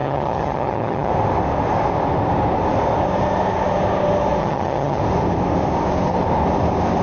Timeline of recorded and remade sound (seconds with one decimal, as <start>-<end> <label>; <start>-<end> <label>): 0.0-1.1 remade; 1.1-4.4 recorded; 4.4-5.0 remade; 5.0-7.0 recorded